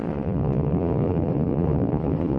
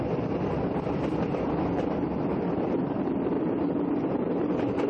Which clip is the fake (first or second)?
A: first